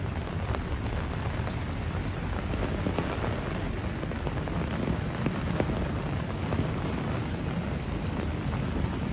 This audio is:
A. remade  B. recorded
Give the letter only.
B